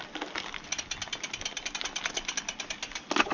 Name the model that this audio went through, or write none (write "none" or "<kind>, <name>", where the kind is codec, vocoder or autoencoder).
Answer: none